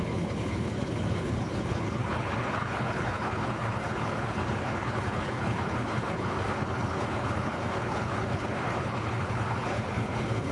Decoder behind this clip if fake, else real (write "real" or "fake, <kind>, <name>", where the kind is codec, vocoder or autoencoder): fake, codec, HILCodec